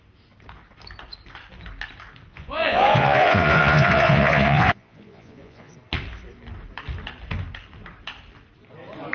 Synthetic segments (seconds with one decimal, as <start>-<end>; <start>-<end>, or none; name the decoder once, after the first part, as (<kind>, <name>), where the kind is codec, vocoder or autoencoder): 2.3-5.7 (vocoder, Vocos)